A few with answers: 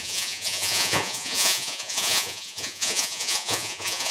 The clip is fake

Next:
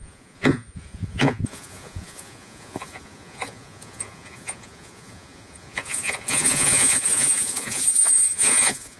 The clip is fake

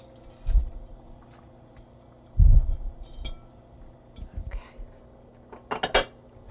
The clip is real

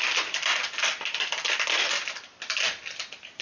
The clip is real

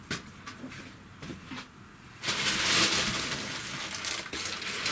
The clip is real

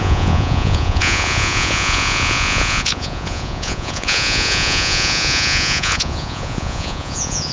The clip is fake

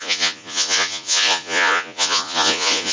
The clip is fake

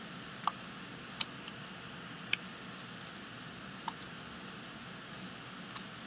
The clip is real